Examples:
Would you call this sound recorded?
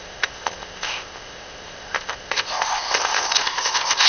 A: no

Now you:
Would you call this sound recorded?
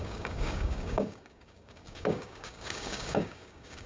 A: no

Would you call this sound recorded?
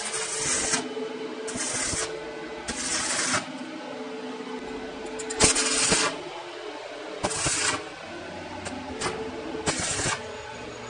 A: yes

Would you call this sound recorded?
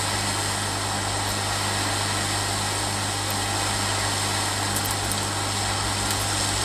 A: yes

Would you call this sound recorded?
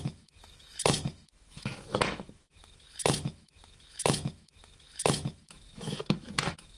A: no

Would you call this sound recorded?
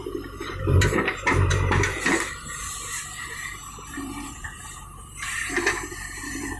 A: no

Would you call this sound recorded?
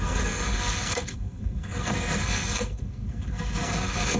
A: no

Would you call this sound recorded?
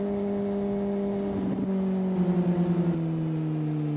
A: yes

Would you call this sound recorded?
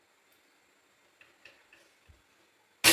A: yes